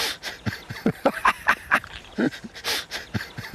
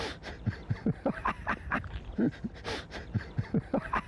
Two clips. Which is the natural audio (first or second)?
second